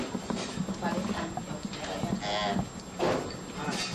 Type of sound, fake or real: real